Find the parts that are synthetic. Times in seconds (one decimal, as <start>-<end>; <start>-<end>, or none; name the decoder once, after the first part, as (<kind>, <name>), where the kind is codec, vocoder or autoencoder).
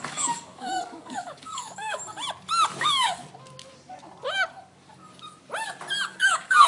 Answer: 0.0-2.0 (codec, DAC); 2.8-3.2; 6.1-6.7